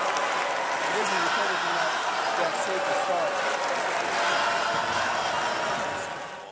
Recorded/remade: recorded